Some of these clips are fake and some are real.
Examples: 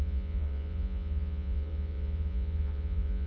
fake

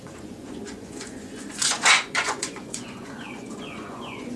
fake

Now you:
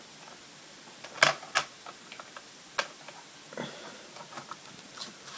real